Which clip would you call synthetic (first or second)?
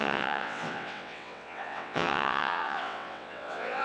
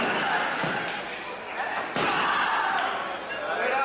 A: first